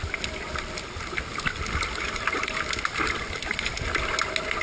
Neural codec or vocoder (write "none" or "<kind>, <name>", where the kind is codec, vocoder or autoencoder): none